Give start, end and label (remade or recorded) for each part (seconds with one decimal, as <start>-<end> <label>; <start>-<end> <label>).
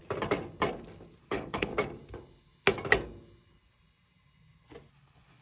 0.0-1.2 recorded; 1.2-1.7 remade; 1.7-4.9 recorded; 4.9-5.4 remade